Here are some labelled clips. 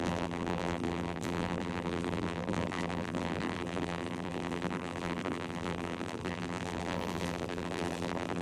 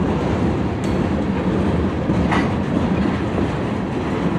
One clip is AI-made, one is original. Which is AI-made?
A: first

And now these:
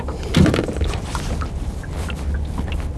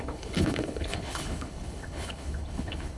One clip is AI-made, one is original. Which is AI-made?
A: second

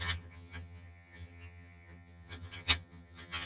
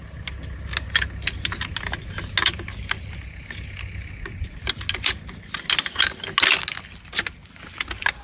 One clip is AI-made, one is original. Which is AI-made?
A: first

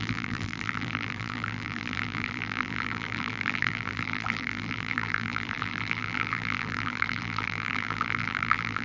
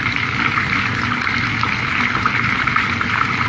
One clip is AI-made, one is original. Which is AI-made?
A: first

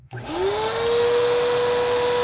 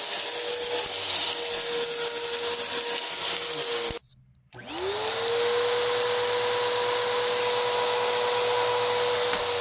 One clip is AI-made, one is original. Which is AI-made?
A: first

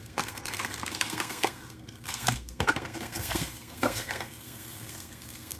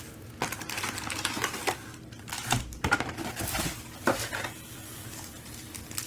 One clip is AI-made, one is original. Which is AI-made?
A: first